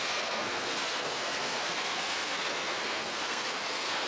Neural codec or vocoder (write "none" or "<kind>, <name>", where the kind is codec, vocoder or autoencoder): codec, SNAC